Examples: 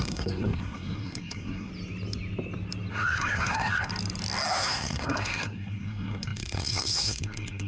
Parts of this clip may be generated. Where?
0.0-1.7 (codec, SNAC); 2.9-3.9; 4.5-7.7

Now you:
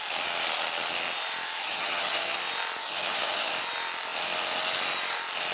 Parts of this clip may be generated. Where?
1.6-2.4 (vocoder, HiFi-GAN); 2.8-3.5